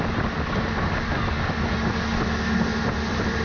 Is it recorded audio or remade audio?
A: remade